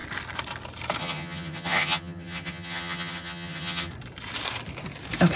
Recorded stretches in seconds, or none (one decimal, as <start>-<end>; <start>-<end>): 0.0-1.0; 3.9-5.4